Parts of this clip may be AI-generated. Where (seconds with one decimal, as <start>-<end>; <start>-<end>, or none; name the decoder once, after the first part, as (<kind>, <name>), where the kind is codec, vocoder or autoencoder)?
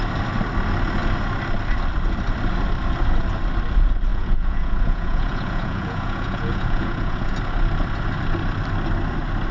4.1-7.4 (vocoder, Vocos)